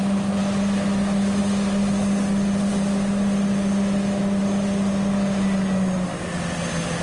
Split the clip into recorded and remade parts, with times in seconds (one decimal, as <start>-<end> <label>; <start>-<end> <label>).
0.0-7.0 recorded

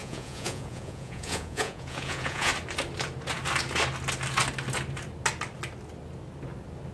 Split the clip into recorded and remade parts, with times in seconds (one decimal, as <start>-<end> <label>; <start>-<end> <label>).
0.0-2.5 remade; 2.5-6.9 recorded

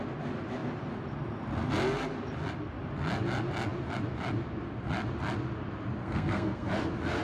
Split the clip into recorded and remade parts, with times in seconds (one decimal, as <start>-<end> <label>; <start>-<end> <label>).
0.0-6.0 recorded; 6.0-6.7 remade; 6.7-7.2 recorded

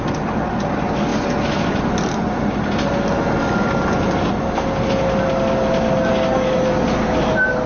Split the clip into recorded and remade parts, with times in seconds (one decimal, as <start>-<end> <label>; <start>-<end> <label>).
0.0-7.7 recorded